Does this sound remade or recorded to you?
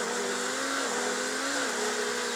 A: recorded